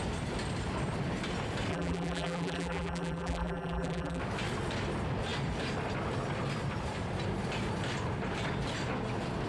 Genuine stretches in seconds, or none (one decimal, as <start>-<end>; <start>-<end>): 0.0-1.7; 4.2-9.5